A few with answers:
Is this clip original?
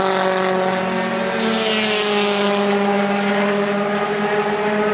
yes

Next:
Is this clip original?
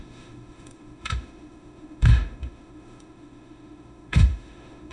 no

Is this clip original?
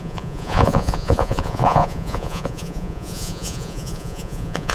no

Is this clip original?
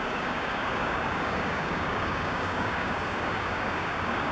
no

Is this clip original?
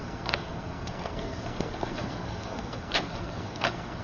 no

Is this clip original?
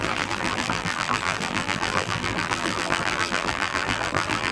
no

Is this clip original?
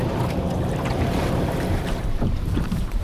no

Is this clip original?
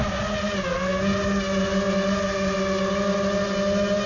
yes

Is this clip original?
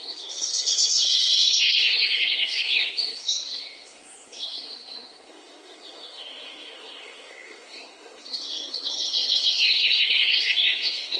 no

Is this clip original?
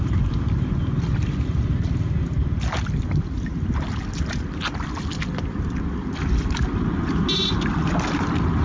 yes